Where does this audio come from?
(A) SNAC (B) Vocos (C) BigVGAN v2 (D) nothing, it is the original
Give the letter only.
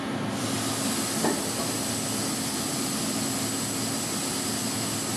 D